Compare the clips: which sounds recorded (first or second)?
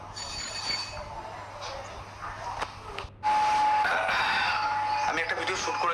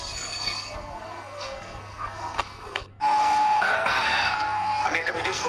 first